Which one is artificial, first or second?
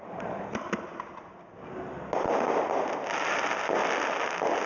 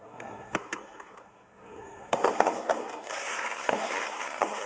second